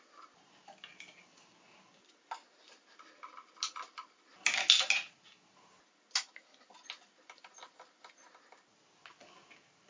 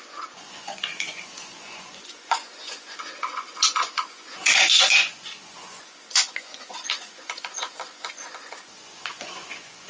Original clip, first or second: first